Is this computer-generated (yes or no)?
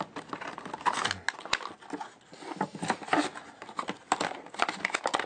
no